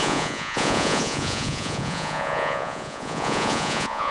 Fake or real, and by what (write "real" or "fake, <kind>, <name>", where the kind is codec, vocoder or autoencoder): fake, vocoder, Vocos